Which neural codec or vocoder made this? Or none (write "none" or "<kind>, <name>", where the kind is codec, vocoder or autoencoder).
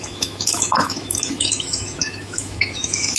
autoencoder, DAC-VAE